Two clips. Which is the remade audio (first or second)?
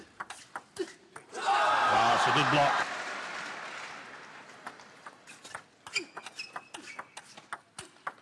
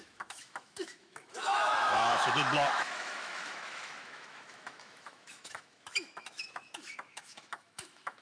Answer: second